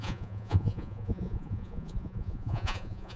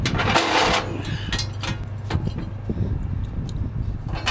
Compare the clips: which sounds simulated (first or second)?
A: first